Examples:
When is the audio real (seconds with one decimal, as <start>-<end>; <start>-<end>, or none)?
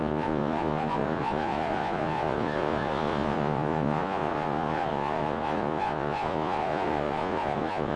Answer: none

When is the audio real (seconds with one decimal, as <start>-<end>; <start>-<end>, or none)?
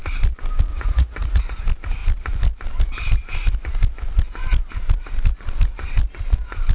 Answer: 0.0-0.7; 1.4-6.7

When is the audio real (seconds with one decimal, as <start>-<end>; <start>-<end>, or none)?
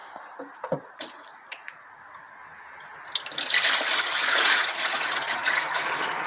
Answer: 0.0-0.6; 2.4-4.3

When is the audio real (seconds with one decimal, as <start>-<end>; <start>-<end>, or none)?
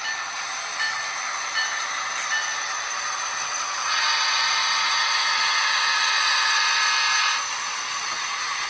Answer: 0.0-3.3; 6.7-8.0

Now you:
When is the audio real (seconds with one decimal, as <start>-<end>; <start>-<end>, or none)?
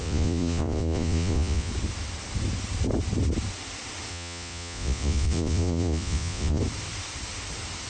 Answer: 1.7-4.1; 6.6-7.9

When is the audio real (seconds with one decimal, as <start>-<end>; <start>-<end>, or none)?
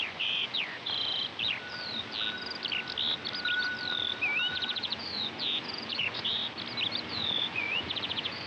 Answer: 1.3-4.5; 6.4-7.1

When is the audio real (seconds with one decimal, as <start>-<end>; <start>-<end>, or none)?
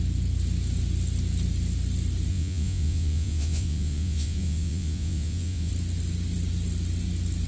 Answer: 0.0-2.3; 5.7-7.5